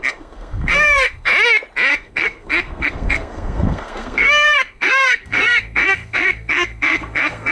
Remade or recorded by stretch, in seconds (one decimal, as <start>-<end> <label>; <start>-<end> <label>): 0.0-1.3 remade; 1.3-1.9 recorded; 1.9-7.5 remade